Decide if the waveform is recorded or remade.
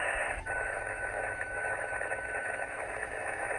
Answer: remade